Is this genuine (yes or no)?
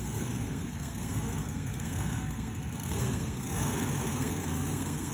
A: no